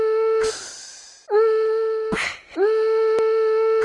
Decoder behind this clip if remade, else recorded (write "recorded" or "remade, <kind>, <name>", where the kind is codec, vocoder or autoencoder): recorded